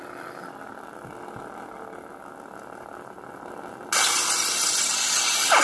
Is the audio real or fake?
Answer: real